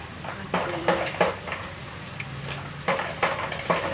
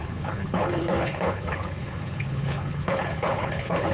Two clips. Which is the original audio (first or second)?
first